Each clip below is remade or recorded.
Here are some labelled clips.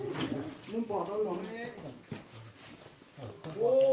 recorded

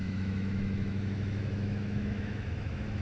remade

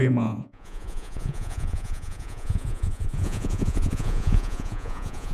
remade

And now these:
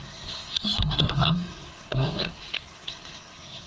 remade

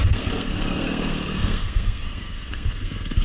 remade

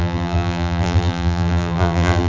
remade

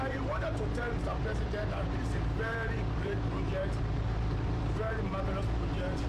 remade